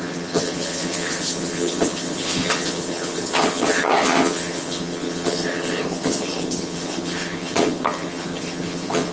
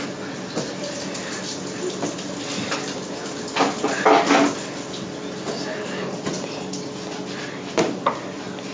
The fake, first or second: first